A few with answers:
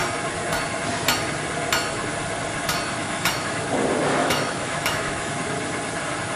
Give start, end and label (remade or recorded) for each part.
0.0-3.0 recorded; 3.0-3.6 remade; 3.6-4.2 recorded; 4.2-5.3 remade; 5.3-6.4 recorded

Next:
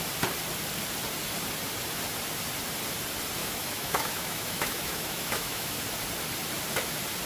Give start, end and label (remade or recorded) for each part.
0.0-3.4 recorded; 3.4-5.8 remade; 5.8-7.3 recorded

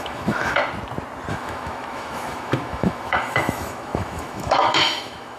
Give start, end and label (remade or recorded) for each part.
0.0-0.6 remade; 0.6-1.3 recorded; 1.3-5.4 remade

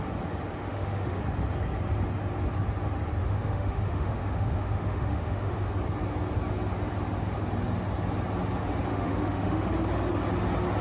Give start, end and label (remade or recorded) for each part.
0.0-0.6 recorded; 0.6-1.2 remade; 1.2-3.2 recorded; 3.2-5.7 remade; 5.7-8.9 recorded; 8.9-9.7 remade; 9.7-10.8 recorded

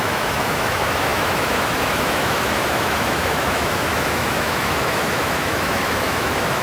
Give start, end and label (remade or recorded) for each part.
0.0-6.6 remade

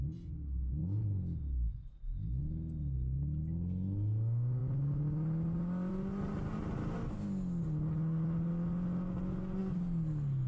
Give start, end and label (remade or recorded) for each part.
0.0-10.5 recorded